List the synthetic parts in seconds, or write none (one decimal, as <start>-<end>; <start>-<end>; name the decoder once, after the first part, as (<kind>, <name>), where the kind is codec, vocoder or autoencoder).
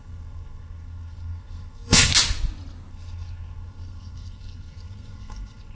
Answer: 0.0-2.1 (codec, SNAC); 2.9-5.7